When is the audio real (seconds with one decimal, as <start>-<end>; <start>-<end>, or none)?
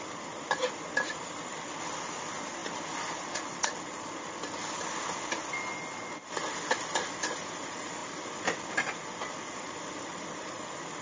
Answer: 0.0-11.0